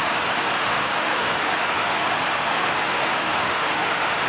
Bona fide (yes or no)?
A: no